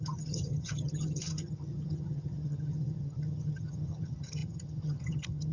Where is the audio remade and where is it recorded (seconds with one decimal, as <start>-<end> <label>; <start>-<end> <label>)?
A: 0.0-5.5 remade